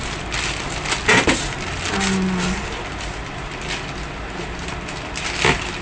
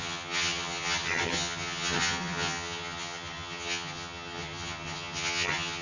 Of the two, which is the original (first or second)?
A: first